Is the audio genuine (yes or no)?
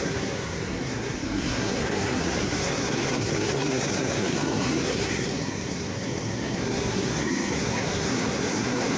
no